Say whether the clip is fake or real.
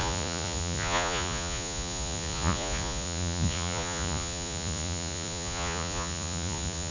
fake